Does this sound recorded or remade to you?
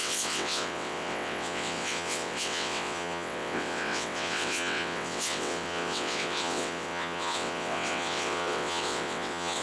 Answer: remade